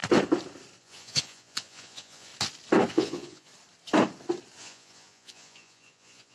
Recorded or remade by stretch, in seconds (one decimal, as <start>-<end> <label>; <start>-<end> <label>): 0.0-0.8 recorded; 0.8-2.3 remade; 2.3-2.9 recorded; 2.9-3.5 remade; 3.5-4.6 recorded; 4.6-6.3 remade